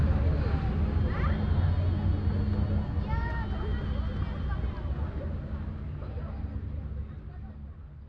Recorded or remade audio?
recorded